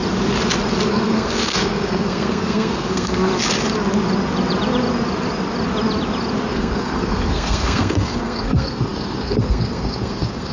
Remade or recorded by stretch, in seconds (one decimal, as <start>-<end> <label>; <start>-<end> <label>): 0.0-0.9 recorded; 0.9-3.3 remade; 3.3-6.5 recorded; 6.5-10.5 remade